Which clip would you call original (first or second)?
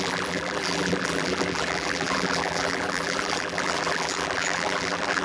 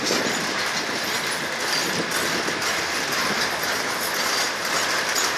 second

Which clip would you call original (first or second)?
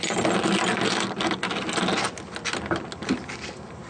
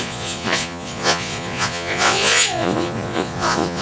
first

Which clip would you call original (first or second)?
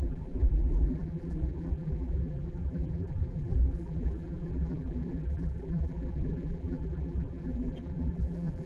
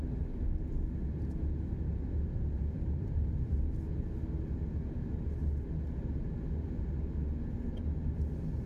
second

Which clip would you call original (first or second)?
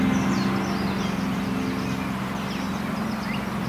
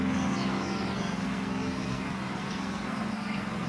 first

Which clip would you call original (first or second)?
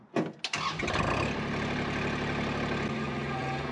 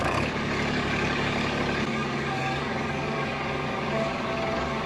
first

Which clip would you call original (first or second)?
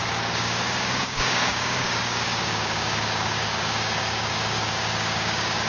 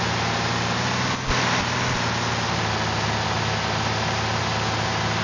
second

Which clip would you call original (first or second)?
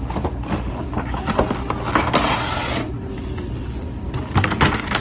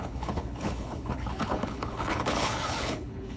first